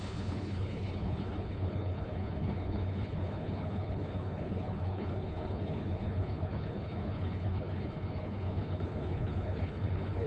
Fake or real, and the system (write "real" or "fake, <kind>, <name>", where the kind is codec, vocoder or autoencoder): fake, codec, HILCodec